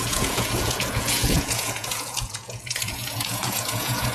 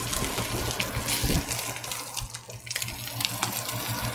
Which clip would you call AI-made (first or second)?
first